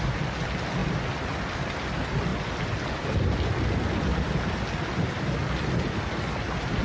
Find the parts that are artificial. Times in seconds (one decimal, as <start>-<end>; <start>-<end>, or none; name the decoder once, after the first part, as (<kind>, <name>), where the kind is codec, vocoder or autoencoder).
none